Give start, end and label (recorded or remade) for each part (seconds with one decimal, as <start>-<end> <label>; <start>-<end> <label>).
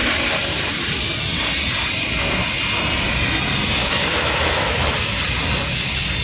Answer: 0.0-3.8 recorded; 3.8-4.7 remade; 4.7-6.2 recorded